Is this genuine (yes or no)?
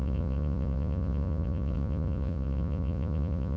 no